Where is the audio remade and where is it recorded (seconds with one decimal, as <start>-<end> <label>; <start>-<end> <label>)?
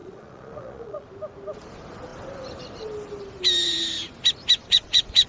0.0-1.1 remade; 1.1-4.6 recorded; 4.6-5.3 remade